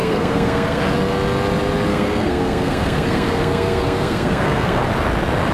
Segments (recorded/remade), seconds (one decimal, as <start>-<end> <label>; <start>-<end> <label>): 0.0-0.8 remade; 0.8-1.9 recorded; 1.9-4.8 remade; 4.8-5.5 recorded